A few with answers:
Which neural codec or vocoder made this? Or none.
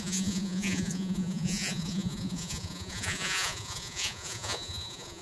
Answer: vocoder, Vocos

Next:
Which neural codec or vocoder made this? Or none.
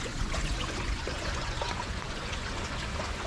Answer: vocoder, Vocos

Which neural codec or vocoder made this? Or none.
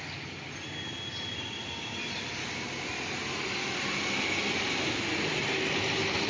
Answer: none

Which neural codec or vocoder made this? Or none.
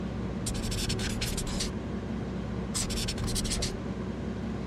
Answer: none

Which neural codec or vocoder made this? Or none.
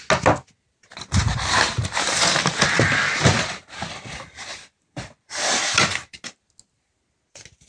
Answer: none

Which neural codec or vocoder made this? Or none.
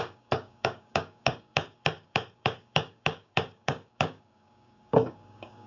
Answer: codec, DAC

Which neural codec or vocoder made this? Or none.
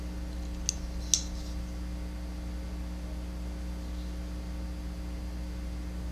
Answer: none